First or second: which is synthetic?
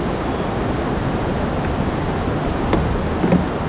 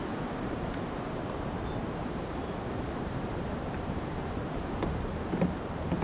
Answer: second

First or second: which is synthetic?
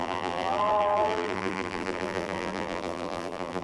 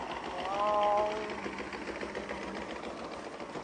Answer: first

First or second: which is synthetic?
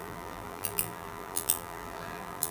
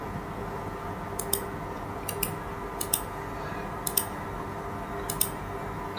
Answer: first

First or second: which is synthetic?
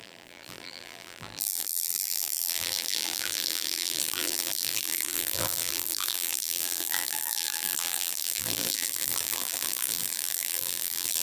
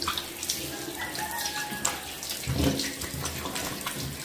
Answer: first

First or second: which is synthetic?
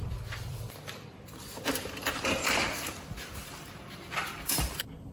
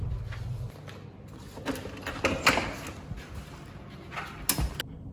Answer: first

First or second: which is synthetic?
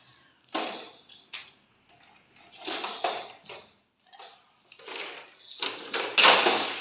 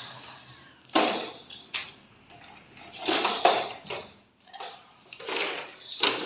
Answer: second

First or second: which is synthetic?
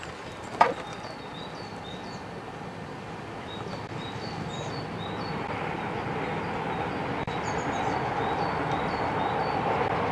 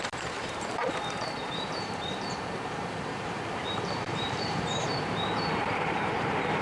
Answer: second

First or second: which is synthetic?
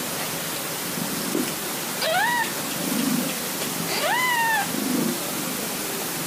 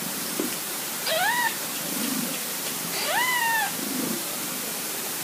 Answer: second